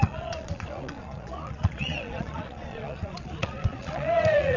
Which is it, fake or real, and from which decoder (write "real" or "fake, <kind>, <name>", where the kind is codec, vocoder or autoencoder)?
fake, vocoder, Vocos